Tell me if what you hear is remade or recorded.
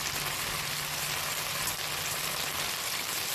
recorded